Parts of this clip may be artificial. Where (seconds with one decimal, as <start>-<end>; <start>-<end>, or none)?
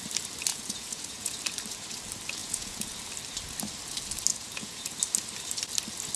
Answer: 0.5-1.3; 2.4-2.9; 4.3-5.0